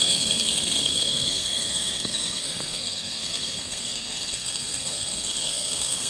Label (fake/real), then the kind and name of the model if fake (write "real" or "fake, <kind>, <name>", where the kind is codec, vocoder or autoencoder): fake, codec, SNAC